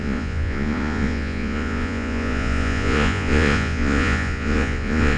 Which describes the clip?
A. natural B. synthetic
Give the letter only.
B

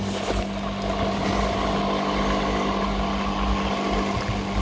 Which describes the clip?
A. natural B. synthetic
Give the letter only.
A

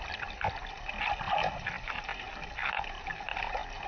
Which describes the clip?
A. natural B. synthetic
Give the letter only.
A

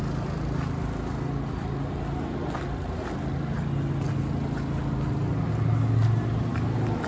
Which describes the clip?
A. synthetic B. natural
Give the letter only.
B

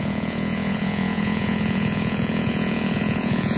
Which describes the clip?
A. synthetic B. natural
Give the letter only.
A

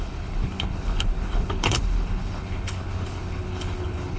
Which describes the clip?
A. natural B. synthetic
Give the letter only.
B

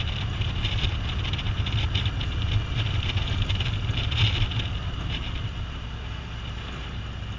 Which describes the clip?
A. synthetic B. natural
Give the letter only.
B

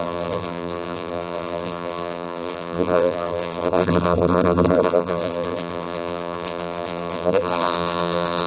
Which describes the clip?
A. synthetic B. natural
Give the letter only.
A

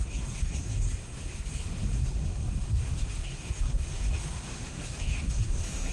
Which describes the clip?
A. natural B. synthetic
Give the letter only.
B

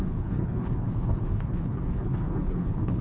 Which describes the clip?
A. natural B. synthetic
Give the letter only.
B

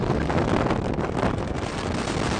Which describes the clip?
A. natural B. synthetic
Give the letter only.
A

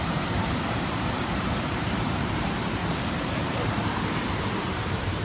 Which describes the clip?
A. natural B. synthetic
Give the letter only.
B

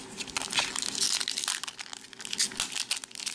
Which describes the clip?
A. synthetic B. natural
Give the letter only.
B